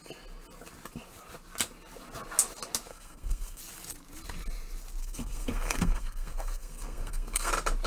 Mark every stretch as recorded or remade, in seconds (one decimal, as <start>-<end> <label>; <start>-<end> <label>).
0.0-2.9 recorded; 2.9-3.6 remade; 3.6-5.0 recorded; 5.0-7.5 remade; 7.5-7.9 recorded